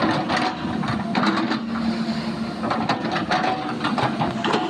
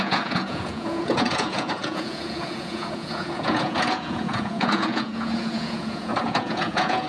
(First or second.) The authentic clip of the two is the first